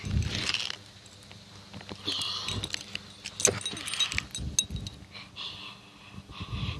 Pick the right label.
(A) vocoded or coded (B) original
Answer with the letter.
B